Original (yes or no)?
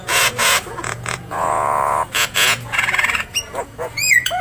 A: no